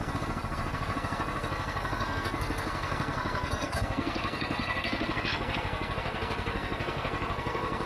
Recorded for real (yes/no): no